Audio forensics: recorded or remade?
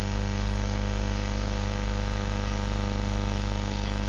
remade